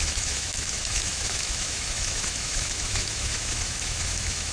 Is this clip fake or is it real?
fake